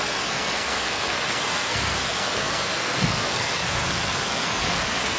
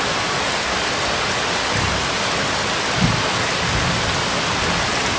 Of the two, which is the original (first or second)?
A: second